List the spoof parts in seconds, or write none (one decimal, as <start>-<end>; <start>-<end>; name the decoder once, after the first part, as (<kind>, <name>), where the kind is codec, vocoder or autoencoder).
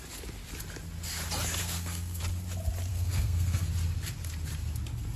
1.6-2.2 (codec, SNAC); 2.9-3.7